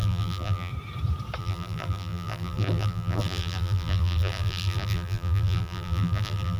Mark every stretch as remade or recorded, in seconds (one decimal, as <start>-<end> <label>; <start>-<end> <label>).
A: 0.0-0.7 remade; 0.7-1.4 recorded; 1.4-6.6 remade